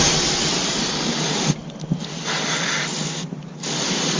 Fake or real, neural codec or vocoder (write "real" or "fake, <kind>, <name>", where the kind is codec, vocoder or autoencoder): real